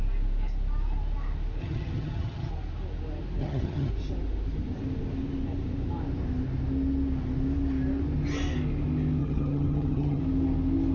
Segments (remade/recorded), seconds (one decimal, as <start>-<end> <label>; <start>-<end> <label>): 0.0-1.6 recorded; 1.6-2.5 remade; 2.5-3.4 recorded; 3.4-3.9 remade; 3.9-9.2 recorded; 9.2-10.2 remade; 10.2-10.9 recorded